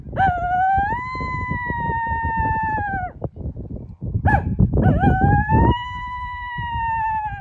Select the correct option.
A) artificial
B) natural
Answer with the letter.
B